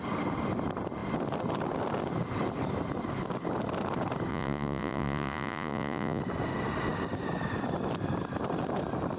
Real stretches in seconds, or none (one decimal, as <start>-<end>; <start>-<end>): 0.0-4.3; 6.2-9.2